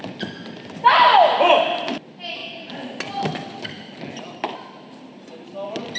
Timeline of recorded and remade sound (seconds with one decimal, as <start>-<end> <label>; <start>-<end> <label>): 0.0-6.0 recorded